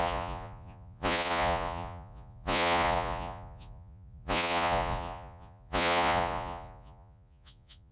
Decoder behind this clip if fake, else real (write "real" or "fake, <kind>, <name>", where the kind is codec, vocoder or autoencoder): fake, vocoder, Vocos